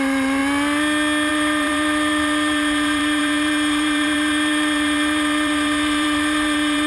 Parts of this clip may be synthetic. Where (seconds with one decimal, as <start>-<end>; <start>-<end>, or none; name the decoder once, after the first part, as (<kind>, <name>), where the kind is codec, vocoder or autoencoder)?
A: 0.0-0.4 (vocoder, BigVGAN v2); 1.3-6.9